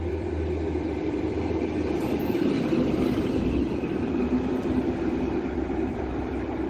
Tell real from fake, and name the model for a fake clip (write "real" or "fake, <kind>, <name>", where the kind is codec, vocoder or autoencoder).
fake, vocoder, BigVGAN v2